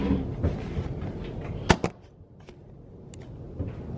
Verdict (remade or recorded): recorded